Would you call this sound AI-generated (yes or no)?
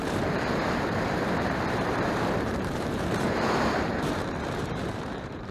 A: yes